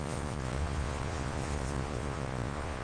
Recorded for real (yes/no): no